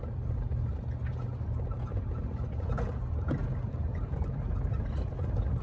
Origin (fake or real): real